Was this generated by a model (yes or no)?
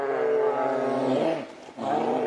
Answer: no